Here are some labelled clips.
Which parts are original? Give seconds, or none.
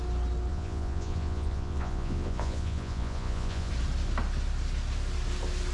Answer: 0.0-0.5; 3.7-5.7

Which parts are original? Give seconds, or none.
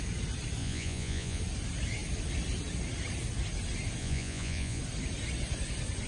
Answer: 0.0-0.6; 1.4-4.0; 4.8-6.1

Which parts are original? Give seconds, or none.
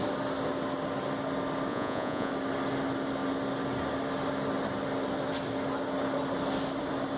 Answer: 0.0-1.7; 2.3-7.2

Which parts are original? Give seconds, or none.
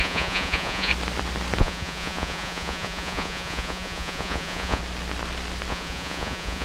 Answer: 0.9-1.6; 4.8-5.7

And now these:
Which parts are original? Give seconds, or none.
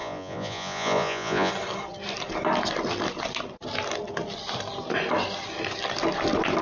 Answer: 1.5-6.6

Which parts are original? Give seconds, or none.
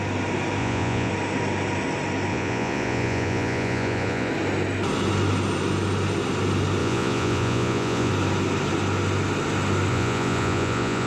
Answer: 0.0-0.6; 1.1-2.3; 4.3-6.8; 8.1-9.9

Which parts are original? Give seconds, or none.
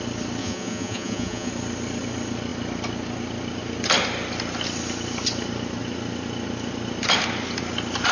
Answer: 0.0-0.4; 1.5-8.1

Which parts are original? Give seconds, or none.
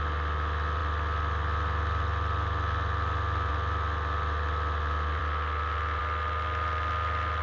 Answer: 0.0-7.4